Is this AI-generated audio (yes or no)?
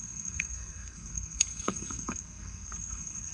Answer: yes